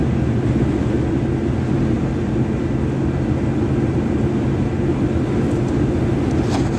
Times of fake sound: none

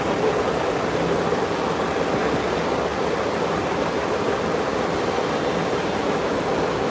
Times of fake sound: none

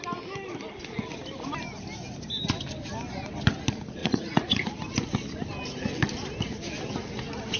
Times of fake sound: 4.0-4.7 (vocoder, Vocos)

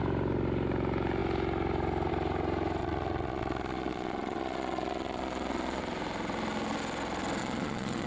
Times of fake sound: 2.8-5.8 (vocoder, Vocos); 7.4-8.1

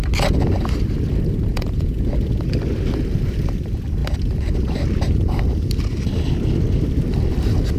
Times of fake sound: 1.5-2.1 (vocoder, Vocos)